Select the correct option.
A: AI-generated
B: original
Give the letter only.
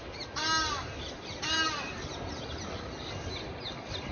B